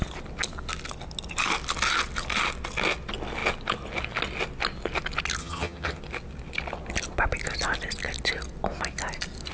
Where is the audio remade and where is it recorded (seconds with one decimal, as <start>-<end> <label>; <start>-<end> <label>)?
0.0-5.4 recorded; 5.4-6.0 remade; 6.0-9.5 recorded

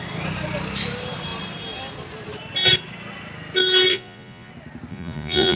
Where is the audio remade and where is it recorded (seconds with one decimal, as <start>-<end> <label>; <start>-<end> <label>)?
0.0-3.9 recorded; 3.9-4.5 remade; 4.5-4.9 recorded; 4.9-5.6 remade

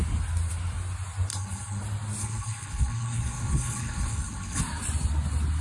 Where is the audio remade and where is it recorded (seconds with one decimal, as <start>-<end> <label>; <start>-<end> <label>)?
0.0-1.3 recorded; 1.3-1.8 remade; 1.8-2.2 recorded; 2.2-4.6 remade; 4.6-5.6 recorded